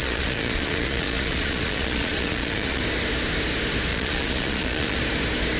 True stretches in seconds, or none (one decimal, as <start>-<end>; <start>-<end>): 2.8-3.9; 5.0-5.6